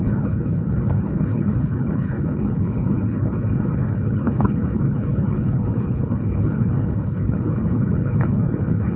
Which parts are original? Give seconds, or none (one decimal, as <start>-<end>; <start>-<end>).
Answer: none